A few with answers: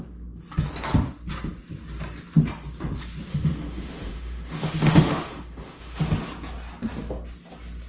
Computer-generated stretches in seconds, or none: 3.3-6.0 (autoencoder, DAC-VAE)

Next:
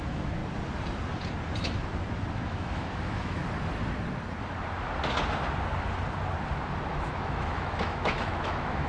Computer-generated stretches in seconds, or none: 0.0-0.4 (autoencoder, DAC-VAE); 2.3-3.4; 6.9-8.9

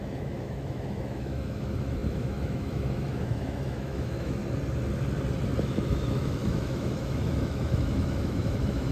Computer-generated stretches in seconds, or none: 0.0-4.4 (autoencoder, DAC-VAE); 5.6-8.9

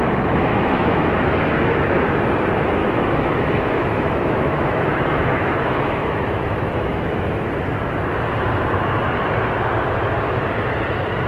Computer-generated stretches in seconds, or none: 0.5-2.0 (autoencoder, DAC-VAE); 2.8-7.4